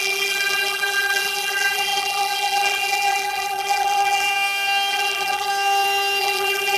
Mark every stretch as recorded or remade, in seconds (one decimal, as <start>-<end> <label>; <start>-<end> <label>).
0.0-4.3 remade; 4.3-4.9 recorded; 4.9-5.5 remade; 5.5-6.2 recorded; 6.2-6.8 remade